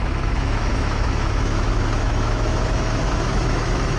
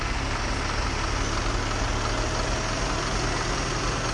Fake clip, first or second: first